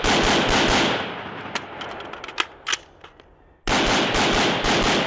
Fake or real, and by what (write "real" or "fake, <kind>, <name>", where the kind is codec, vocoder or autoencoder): real